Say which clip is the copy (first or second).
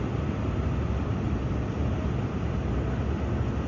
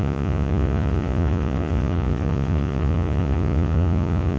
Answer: second